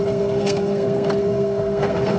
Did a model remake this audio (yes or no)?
yes